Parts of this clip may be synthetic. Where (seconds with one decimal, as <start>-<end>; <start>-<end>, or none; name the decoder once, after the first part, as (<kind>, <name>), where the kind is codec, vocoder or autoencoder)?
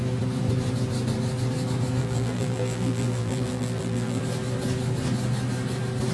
2.0-4.2 (vocoder, BigVGAN v2)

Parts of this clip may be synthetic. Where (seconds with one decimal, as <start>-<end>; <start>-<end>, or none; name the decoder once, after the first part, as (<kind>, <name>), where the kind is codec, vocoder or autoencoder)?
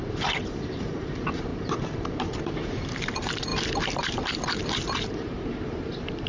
0.0-6.3 (vocoder, BigVGAN v2)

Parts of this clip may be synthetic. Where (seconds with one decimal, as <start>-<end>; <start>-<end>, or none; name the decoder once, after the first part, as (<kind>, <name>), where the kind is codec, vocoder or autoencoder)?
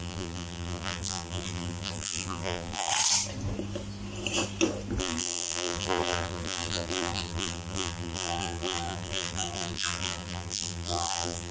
0.0-2.9 (vocoder, BigVGAN v2); 5.0-11.5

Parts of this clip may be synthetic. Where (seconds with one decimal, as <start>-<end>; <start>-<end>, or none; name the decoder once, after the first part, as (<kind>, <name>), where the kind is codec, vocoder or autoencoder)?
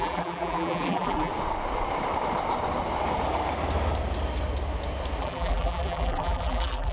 0.0-1.3 (vocoder, BigVGAN v2); 5.2-6.9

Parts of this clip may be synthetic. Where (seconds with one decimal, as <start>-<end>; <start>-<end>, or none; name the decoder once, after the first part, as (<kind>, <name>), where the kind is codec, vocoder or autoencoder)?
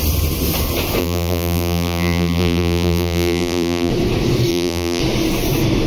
1.0-3.9 (vocoder, BigVGAN v2); 4.5-5.0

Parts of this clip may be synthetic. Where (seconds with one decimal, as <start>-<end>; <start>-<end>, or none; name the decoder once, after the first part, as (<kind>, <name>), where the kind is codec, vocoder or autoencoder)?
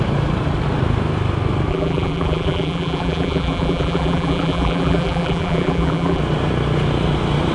1.7-6.2 (vocoder, BigVGAN v2)